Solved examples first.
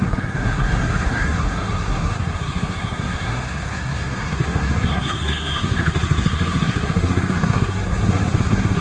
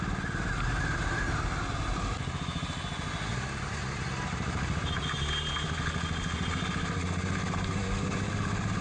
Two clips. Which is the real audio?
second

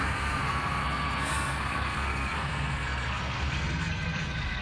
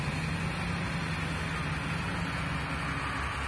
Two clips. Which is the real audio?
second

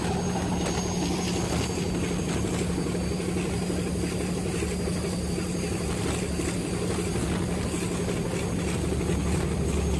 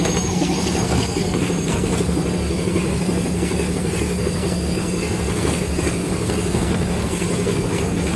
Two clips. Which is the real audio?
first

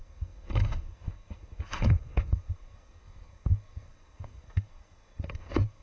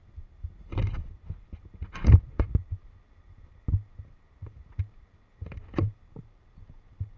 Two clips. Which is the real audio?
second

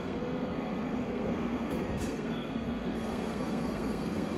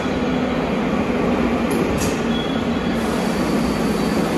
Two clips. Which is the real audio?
second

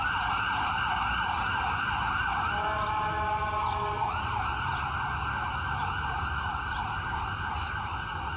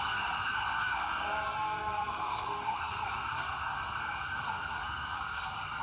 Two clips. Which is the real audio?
first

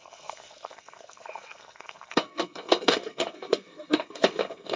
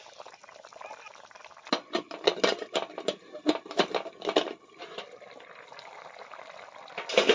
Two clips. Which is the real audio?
second